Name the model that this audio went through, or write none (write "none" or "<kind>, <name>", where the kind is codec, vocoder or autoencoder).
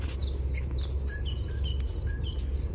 none